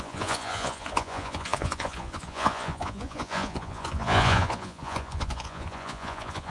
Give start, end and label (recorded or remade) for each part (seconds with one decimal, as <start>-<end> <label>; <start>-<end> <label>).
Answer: 0.0-6.5 remade